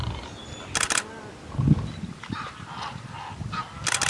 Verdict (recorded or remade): recorded